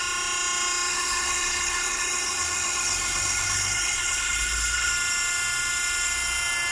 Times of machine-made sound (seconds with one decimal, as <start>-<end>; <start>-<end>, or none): 0.9-4.9